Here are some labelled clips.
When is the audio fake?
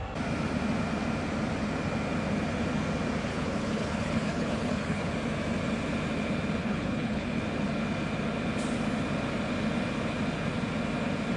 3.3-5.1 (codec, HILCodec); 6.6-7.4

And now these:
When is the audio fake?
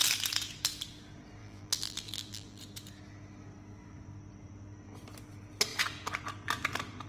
1.4-2.6 (vocoder, BigVGAN v2)